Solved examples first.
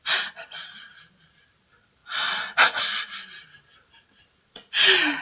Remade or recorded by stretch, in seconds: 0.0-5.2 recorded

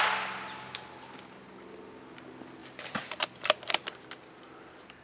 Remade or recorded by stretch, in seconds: 0.0-2.6 recorded; 2.6-3.7 remade; 3.7-5.0 recorded

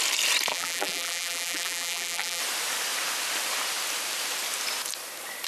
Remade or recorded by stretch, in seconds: 0.0-0.5 recorded; 0.5-2.4 remade; 2.4-5.5 recorded

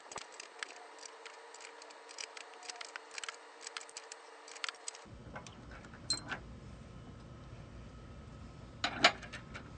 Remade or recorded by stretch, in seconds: 0.0-9.8 recorded

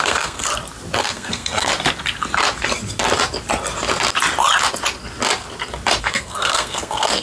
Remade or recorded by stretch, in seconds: 0.0-0.5 remade; 0.5-1.0 recorded; 1.0-1.7 remade; 1.7-6.0 recorded; 6.0-7.2 remade

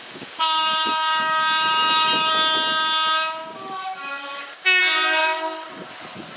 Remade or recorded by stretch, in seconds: 0.0-2.3 remade; 2.3-3.4 recorded; 3.4-4.8 remade; 4.8-5.2 recorded; 5.2-5.9 remade; 5.9-6.4 recorded

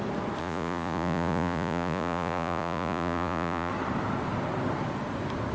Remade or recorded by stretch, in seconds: 0.0-0.4 recorded; 0.4-3.7 remade; 3.7-5.5 recorded